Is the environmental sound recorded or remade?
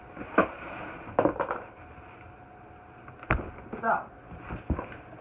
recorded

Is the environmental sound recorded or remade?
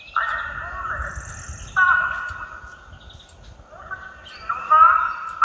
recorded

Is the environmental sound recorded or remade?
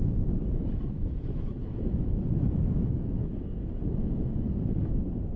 remade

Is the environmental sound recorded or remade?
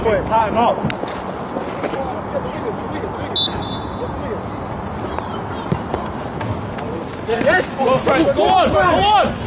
recorded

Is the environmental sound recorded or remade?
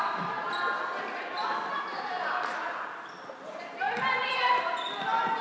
recorded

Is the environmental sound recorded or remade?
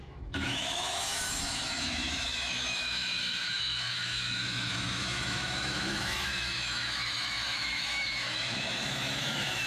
remade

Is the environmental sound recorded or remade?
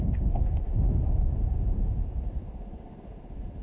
remade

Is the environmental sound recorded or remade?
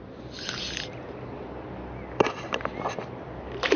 recorded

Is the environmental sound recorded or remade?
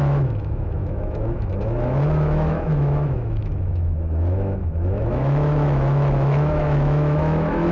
remade